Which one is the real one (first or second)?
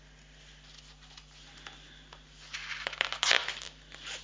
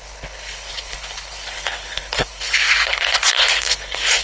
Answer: first